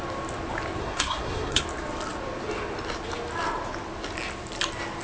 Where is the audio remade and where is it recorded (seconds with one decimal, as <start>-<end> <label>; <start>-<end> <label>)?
0.0-0.8 recorded; 0.8-1.6 remade; 1.6-5.0 recorded